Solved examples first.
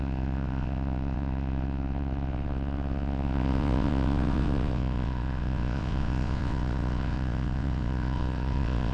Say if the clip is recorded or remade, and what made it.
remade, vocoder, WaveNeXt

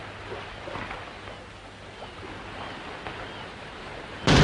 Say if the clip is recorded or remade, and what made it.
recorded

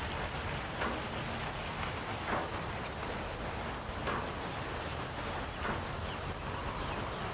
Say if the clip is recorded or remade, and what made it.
recorded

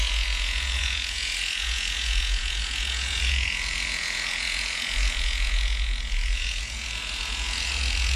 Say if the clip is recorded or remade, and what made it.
remade, vocoder, Vocos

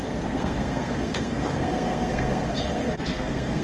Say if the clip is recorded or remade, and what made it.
remade, codec, SNAC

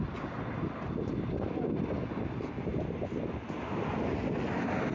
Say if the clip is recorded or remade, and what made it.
recorded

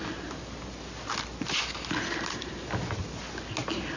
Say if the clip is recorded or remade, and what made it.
recorded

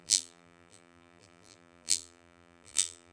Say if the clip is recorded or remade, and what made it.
remade, vocoder, BigVGAN v2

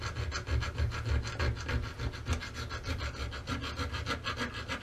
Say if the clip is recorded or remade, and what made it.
recorded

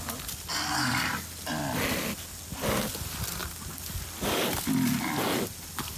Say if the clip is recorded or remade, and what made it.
recorded